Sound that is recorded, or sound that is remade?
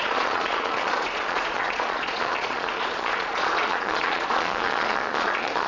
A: remade